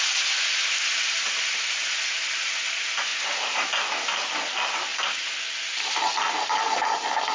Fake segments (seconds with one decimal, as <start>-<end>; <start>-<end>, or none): 0.9-2.0; 4.9-6.2